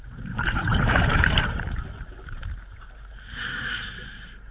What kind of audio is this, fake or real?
fake